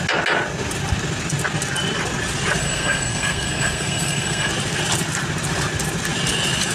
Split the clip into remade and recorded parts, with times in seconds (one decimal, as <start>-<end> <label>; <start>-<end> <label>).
0.0-2.6 recorded; 2.6-4.5 remade; 4.5-6.7 recorded